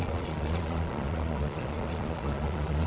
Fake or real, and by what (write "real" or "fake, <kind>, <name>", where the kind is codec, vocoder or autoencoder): fake, vocoder, Vocos